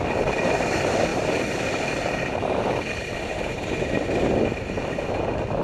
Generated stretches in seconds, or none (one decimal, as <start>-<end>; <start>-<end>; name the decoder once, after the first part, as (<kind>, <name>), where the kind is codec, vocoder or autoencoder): none